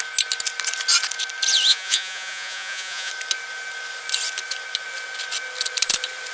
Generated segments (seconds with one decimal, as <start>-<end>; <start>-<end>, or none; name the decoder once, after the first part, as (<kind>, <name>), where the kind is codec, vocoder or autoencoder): 1.7-3.1 (vocoder, Vocos)